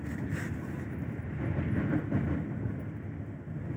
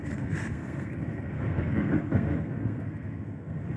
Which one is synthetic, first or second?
second